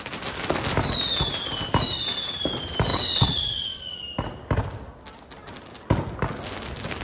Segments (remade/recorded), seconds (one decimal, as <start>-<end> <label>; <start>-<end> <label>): 0.0-2.9 recorded; 2.9-3.8 remade; 3.8-7.0 recorded